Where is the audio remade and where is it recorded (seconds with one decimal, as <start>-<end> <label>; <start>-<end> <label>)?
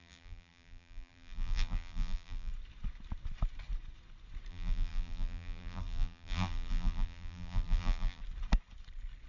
0.0-2.5 remade; 2.5-4.5 recorded; 4.5-8.2 remade; 8.2-9.3 recorded